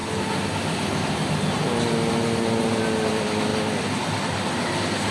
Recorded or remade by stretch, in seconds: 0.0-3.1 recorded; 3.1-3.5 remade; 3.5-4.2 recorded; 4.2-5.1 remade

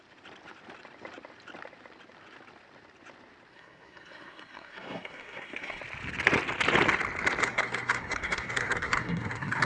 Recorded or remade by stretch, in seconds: 0.0-3.5 recorded; 3.5-5.8 remade; 5.8-7.4 recorded; 7.4-9.7 remade